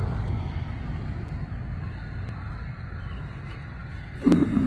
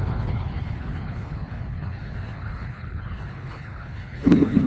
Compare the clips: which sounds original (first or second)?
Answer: first